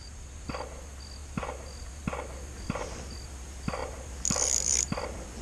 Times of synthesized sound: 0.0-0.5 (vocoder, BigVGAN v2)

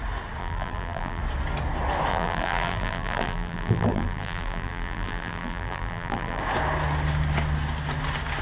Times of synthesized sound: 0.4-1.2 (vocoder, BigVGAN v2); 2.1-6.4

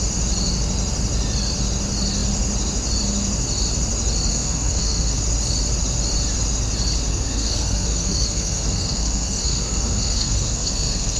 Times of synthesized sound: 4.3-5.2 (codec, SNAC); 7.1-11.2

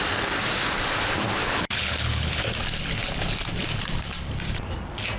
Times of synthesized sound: 1.4-2.4 (codec, HILCodec)

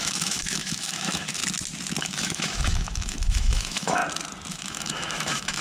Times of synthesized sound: 0.0-1.4 (autoencoder, DAC-VAE); 2.0-4.0; 4.5-5.6

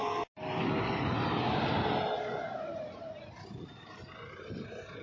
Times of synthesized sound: none

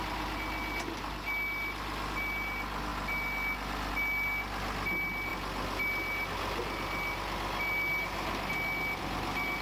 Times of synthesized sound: none

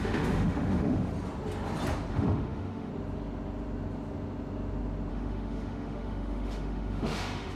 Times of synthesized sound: 0.0-1.1 (autoencoder, DAC-VAE); 2.1-2.9; 5.1-7.6